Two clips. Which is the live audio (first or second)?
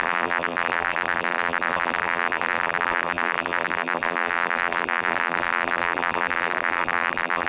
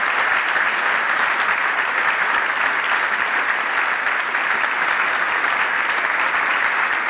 second